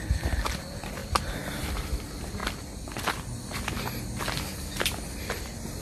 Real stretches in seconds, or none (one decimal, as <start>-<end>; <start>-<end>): 0.0-1.0; 1.7-2.4; 3.4-5.8